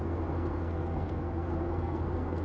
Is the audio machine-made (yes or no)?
yes